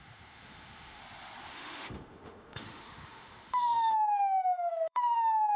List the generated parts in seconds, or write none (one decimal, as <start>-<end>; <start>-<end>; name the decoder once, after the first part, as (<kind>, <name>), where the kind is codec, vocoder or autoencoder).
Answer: 0.0-1.0 (autoencoder, DAC-VAE); 1.5-5.6